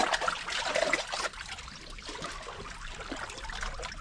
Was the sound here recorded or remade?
recorded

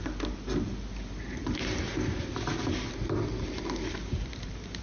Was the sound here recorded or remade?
recorded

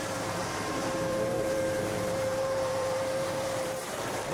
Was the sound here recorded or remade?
remade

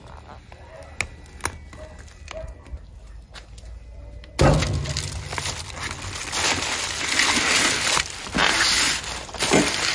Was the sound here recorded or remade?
recorded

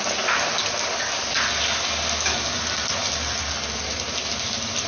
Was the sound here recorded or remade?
recorded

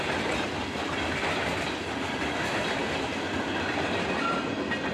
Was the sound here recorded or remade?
recorded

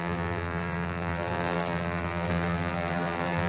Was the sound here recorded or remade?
remade